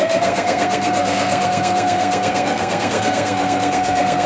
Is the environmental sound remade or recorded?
remade